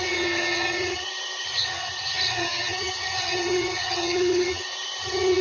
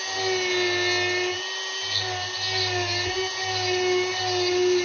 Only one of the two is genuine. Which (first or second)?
second